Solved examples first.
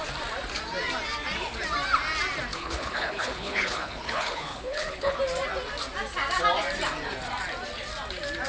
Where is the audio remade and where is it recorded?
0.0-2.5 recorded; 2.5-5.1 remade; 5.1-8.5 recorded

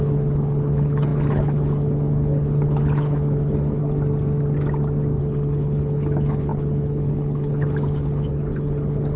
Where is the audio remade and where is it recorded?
0.0-3.8 remade; 3.8-5.2 recorded; 5.2-9.2 remade